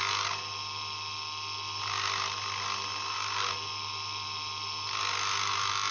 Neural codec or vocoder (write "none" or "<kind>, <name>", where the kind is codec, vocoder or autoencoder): none